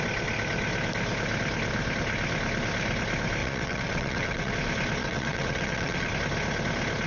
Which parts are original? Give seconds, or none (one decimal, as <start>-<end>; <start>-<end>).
0.0-3.4; 4.5-5.0; 6.1-7.1